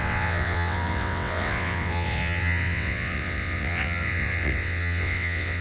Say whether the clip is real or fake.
fake